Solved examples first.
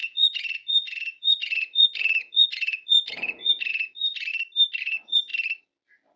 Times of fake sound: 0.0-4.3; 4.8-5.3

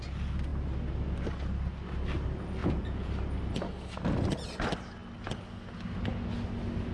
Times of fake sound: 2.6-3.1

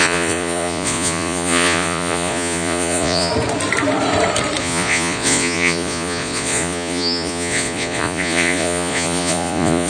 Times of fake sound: 0.0-3.3; 4.6-9.9